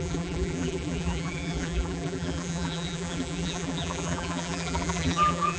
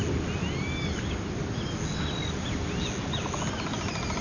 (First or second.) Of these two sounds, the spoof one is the first